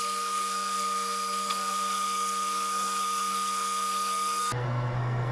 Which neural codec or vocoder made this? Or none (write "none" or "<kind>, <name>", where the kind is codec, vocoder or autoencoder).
codec, SNAC